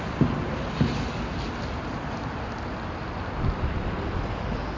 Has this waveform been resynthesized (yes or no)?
no